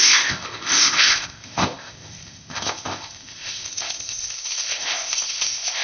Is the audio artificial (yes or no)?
yes